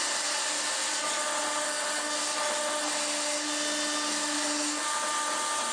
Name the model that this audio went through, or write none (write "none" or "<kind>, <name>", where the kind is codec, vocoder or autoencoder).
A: none